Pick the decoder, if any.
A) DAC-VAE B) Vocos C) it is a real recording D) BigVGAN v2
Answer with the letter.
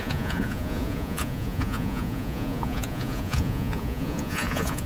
B